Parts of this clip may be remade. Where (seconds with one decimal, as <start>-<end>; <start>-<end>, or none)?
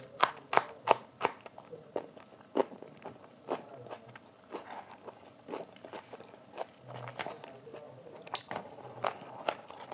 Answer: none